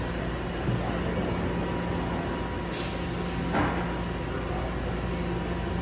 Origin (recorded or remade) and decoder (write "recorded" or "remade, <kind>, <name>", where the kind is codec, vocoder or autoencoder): recorded